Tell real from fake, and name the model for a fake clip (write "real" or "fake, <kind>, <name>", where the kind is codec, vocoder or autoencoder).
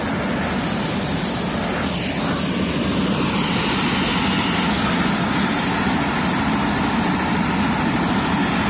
real